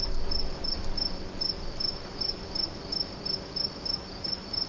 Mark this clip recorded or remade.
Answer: recorded